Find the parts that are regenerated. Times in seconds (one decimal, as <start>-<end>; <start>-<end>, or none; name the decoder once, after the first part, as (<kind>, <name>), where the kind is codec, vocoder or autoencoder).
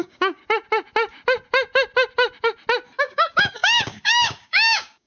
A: 0.0-0.4 (codec, DAC); 3.0-5.1